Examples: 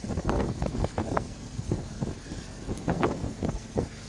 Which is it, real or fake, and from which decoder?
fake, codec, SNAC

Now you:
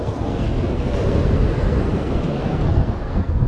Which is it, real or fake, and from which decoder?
fake, codec, SNAC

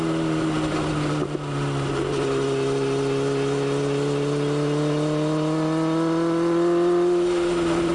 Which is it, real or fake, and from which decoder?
real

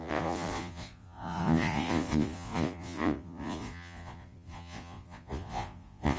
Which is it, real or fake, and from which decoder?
fake, vocoder, Vocos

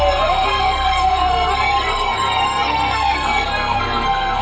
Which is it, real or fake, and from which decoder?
fake, codec, SNAC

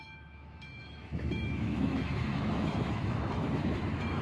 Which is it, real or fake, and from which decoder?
fake, autoencoder, DAC-VAE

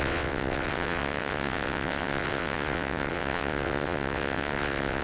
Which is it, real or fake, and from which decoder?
fake, vocoder, WaveNeXt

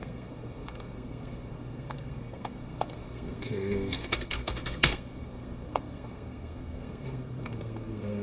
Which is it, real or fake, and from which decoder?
fake, codec, SNAC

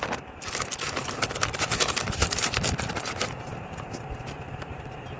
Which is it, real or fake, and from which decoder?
fake, vocoder, BigVGAN v2